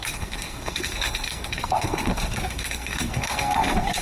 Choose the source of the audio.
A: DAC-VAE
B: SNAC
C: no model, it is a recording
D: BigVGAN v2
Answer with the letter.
B